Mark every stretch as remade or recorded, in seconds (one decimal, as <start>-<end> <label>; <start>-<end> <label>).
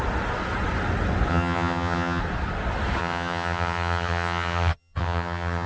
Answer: 0.0-1.3 recorded; 1.3-2.2 remade; 2.2-3.0 recorded; 3.0-5.7 remade